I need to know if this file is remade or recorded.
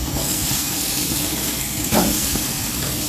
remade